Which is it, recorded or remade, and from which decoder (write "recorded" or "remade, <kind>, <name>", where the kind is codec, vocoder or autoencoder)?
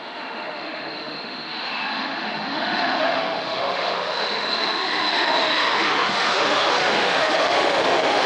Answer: remade, autoencoder, DAC-VAE